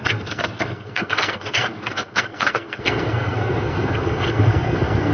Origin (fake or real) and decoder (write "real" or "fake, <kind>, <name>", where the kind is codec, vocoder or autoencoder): fake, codec, SNAC